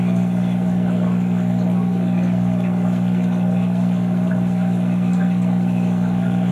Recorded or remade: remade